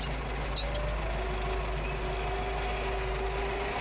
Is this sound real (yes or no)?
yes